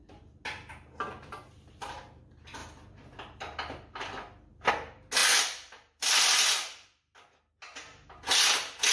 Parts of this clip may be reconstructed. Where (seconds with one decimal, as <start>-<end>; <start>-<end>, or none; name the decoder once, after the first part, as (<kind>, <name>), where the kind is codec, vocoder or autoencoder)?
5.2-6.2 (vocoder, BigVGAN v2)

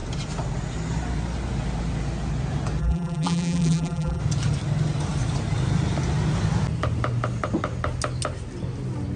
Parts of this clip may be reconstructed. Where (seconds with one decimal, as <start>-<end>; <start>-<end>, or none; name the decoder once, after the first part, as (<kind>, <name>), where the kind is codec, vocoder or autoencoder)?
2.8-4.2 (vocoder, BigVGAN v2)

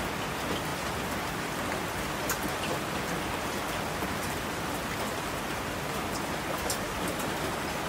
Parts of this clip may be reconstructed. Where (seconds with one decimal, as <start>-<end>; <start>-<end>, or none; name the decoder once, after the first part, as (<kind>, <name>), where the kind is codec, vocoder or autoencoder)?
none

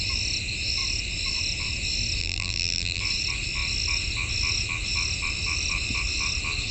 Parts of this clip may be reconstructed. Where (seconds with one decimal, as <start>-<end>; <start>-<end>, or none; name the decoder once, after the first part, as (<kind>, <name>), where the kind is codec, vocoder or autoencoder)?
2.2-3.0 (vocoder, BigVGAN v2)

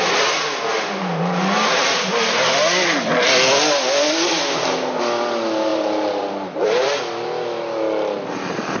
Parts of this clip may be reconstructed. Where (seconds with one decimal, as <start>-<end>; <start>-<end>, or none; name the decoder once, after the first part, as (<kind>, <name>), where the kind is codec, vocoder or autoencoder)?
5.7-7.0 (vocoder, BigVGAN v2)

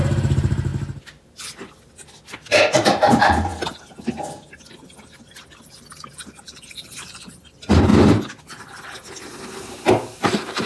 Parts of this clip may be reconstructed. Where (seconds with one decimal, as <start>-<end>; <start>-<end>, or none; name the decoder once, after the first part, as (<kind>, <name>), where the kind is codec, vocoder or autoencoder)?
0.0-0.7 (vocoder, BigVGAN v2); 2.6-3.5; 5.5-7.9; 9.6-10.7

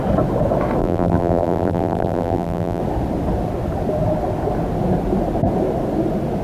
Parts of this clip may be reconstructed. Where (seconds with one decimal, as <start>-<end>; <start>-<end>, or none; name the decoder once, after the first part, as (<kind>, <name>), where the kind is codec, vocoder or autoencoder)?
0.8-2.8 (vocoder, BigVGAN v2)

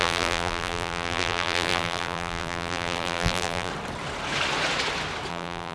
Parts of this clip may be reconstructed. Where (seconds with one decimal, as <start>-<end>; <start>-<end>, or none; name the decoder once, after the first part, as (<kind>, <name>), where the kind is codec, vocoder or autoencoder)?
0.0-3.7 (vocoder, BigVGAN v2); 5.3-5.7